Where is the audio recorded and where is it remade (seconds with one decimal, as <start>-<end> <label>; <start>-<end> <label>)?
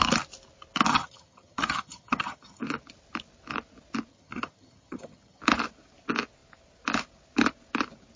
0.0-0.9 recorded; 0.9-2.6 remade; 2.6-4.1 recorded; 4.1-5.4 remade; 5.4-8.2 recorded